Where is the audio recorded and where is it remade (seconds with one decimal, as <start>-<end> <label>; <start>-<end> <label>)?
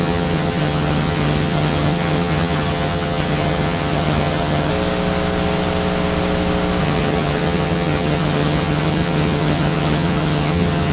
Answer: 0.0-4.7 remade; 4.7-6.8 recorded; 6.8-10.9 remade